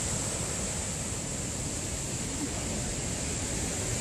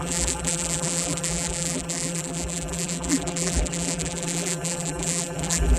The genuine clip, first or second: first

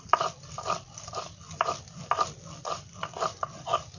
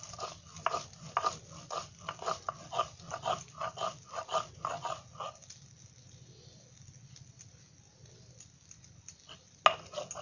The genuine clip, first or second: second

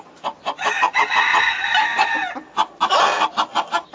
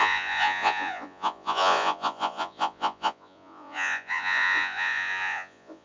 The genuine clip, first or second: first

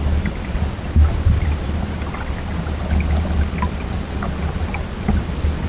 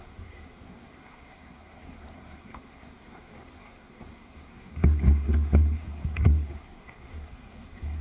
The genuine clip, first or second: first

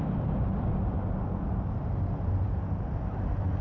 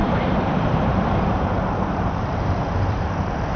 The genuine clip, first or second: first